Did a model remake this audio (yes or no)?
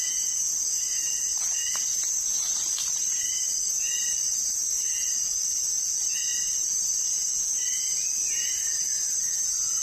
yes